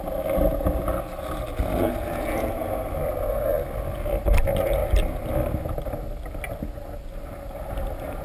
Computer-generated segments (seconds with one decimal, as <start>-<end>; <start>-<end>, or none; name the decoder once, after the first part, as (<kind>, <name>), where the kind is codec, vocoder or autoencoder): none